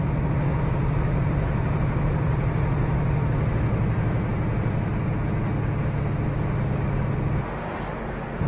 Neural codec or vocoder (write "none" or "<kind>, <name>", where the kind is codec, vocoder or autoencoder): none